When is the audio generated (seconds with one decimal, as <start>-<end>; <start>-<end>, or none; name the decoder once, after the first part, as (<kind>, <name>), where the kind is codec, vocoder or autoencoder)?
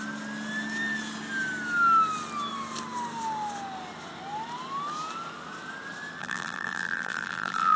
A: 6.2-7.8 (vocoder, BigVGAN v2)